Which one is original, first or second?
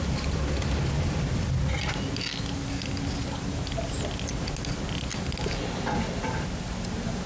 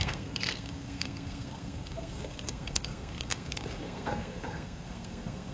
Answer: first